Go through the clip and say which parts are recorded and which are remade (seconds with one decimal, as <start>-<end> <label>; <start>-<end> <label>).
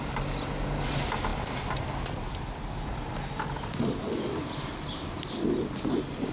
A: 0.0-6.3 recorded